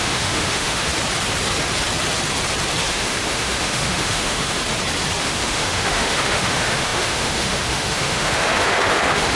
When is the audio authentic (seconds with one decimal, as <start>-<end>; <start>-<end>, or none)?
0.9-2.9; 4.6-5.2